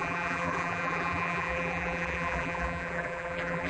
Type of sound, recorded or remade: remade